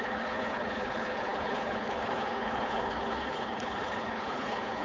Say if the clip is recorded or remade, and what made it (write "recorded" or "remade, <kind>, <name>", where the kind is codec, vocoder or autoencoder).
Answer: remade, codec, HILCodec